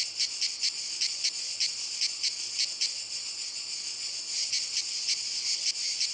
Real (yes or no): yes